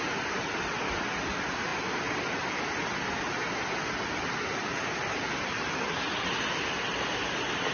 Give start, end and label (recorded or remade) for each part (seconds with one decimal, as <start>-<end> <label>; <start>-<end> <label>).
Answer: 0.0-7.7 recorded